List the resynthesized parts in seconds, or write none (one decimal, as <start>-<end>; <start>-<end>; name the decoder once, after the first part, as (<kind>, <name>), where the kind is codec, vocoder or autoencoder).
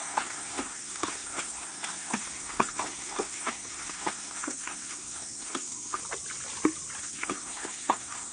0.0-6.0 (codec, SNAC); 7.0-8.3